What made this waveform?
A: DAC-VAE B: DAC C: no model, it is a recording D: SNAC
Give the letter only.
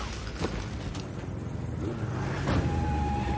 C